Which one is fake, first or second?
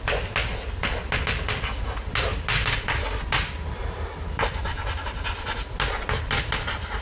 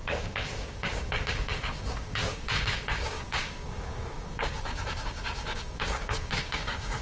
second